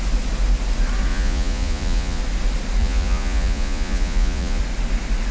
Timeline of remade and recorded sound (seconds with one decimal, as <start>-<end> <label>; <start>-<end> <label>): 0.0-1.1 recorded; 1.1-2.2 remade; 2.2-2.8 recorded; 2.8-4.6 remade; 4.6-5.3 recorded